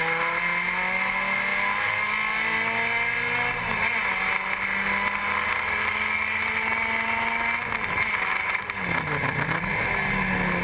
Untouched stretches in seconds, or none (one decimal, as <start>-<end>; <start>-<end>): 0.0-10.6